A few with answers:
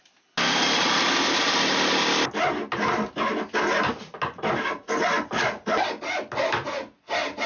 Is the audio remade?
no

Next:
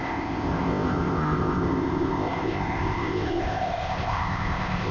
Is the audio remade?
yes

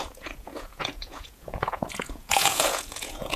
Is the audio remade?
yes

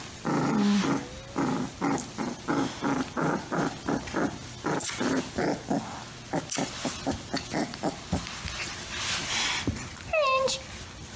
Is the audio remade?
no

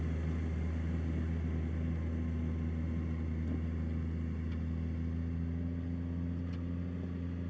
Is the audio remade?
no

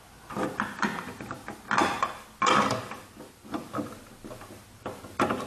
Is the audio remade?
no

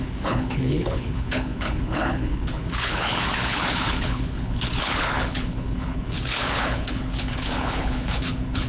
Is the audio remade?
yes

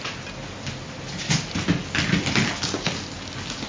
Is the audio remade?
no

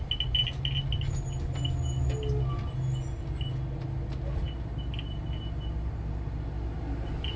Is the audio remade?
no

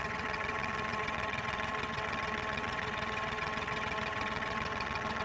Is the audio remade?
yes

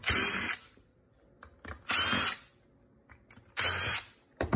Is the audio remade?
no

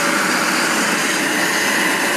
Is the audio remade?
no